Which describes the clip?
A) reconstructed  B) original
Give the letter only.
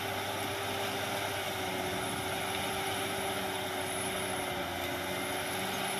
B